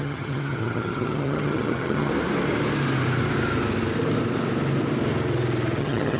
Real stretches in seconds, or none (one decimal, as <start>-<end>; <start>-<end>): 2.1-5.8